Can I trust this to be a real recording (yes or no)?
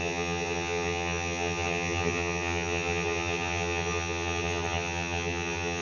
no